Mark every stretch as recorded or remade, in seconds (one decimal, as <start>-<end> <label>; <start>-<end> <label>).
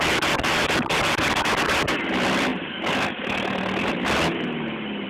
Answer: 0.0-5.1 recorded